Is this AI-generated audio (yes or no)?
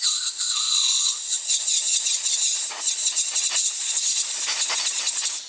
no